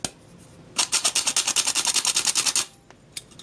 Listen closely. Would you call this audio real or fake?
real